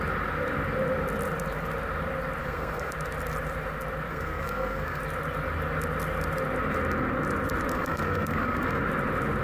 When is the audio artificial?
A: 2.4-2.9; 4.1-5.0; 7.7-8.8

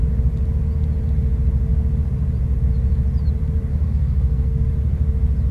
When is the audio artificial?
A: 3.7-4.7

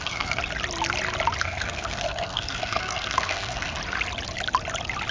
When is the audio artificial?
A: 0.0-0.4; 1.4-3.8

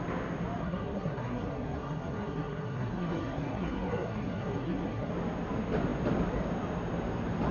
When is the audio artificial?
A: 0.6-5.1

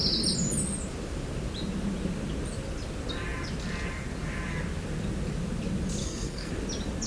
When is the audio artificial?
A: 6.0-6.5